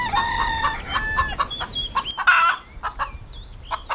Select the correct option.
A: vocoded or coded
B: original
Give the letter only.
B